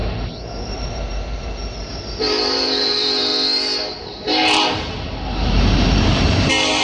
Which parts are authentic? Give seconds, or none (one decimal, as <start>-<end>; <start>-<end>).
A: 3.3-4.0